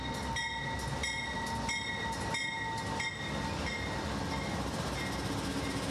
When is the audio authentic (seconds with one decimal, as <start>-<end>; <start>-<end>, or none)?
0.0-5.9